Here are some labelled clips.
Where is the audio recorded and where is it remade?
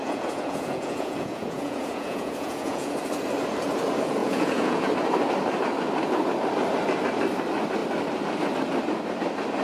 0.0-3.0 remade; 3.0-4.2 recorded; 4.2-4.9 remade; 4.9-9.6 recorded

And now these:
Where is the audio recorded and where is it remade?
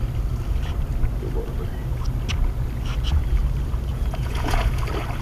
0.0-3.9 recorded; 3.9-4.8 remade; 4.8-5.2 recorded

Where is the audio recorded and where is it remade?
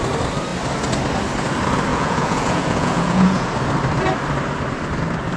0.0-1.9 recorded; 1.9-3.5 remade; 3.5-5.4 recorded